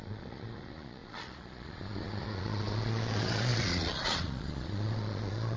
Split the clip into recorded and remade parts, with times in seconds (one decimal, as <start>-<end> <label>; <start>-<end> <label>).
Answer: 0.0-5.6 remade